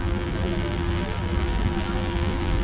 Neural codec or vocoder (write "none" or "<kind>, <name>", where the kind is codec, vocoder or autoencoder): vocoder, BigVGAN v2